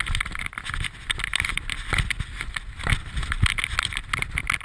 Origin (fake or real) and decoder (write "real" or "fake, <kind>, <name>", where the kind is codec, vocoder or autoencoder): real